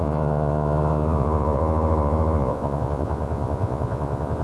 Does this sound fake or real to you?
fake